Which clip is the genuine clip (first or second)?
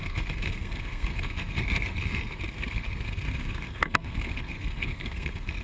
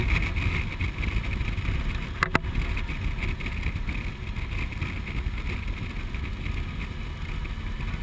second